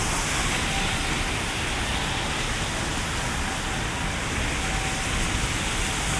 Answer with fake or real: real